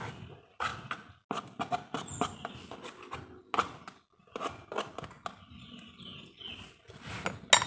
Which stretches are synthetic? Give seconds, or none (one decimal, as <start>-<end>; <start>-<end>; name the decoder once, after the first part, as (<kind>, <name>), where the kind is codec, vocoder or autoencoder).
none

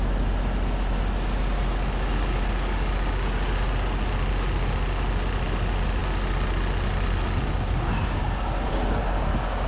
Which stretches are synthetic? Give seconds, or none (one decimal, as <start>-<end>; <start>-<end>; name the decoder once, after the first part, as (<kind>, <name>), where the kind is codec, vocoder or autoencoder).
none

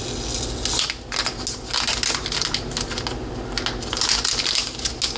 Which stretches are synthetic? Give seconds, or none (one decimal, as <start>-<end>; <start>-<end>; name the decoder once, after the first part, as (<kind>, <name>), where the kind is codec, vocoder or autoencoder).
none

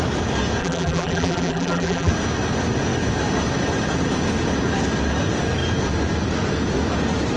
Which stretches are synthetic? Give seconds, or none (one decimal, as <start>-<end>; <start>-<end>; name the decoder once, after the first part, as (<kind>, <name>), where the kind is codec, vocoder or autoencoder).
0.6-2.1 (vocoder, BigVGAN v2)